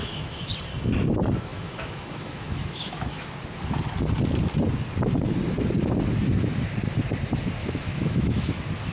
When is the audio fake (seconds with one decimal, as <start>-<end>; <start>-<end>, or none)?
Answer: 0.0-0.5; 1.5-3.3; 7.6-8.5